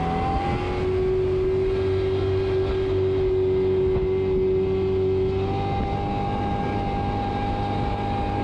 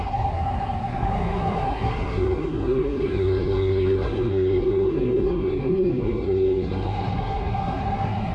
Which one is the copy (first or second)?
second